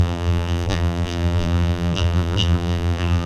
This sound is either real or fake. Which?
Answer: fake